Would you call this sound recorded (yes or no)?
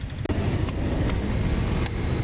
yes